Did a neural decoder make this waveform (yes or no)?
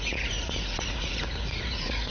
yes